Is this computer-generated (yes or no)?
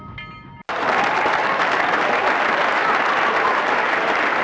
no